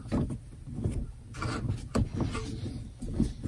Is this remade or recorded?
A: recorded